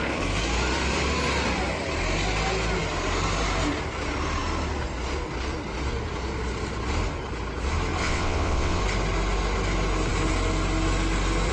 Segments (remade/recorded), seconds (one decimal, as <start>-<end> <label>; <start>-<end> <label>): 0.0-8.0 recorded; 8.0-8.8 remade; 8.8-11.5 recorded